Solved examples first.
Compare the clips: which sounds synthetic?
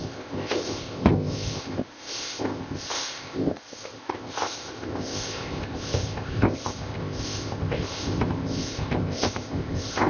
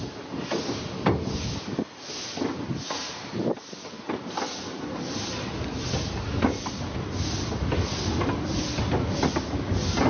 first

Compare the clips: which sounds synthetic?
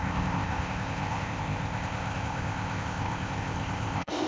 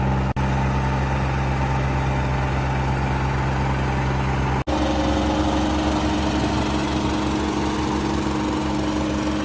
first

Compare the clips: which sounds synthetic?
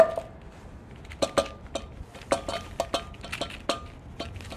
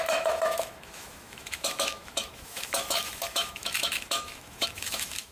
second